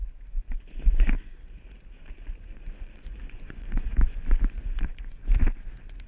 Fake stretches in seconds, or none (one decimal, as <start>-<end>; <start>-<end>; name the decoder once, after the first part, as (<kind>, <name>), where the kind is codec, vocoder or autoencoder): 2.0-5.3 (vocoder, Vocos)